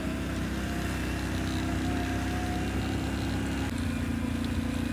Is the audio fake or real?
real